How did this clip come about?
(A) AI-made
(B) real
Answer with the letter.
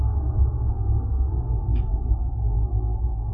A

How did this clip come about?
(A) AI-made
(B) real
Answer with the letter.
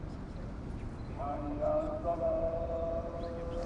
B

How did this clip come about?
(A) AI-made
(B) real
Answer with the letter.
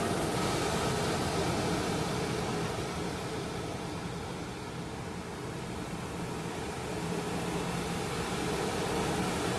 B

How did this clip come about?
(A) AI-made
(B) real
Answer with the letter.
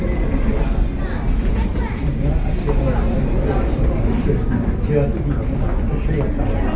B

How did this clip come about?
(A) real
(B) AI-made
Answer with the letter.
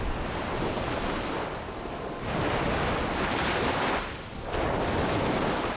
A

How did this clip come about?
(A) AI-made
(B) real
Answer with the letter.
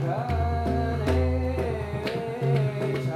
B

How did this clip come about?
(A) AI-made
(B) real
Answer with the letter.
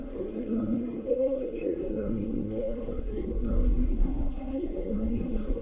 A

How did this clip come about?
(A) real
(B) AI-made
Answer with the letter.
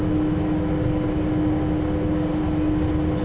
A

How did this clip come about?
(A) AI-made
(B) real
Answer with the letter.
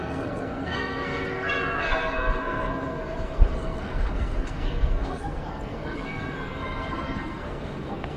A